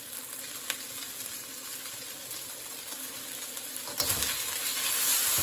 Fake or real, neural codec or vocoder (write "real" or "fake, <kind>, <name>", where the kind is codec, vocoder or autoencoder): real